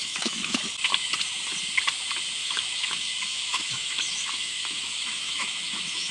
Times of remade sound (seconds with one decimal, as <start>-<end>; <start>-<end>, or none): 0.0-0.7; 2.4-6.1